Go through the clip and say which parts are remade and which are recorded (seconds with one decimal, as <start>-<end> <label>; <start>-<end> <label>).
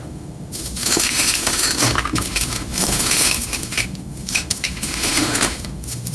0.0-6.1 remade